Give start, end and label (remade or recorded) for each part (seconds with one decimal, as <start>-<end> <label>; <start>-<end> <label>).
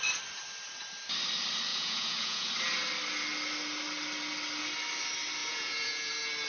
0.0-1.7 recorded; 1.7-2.5 remade; 2.5-5.4 recorded; 5.4-6.1 remade; 6.1-6.5 recorded